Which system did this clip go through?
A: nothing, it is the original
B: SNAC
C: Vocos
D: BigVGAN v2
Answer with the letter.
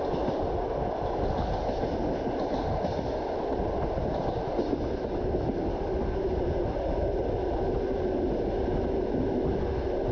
A